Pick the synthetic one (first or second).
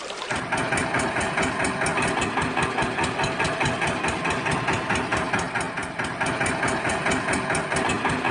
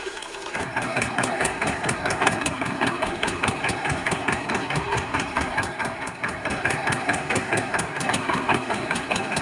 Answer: second